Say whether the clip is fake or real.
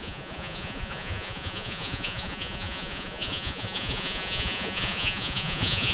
fake